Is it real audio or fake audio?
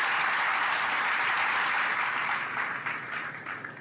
real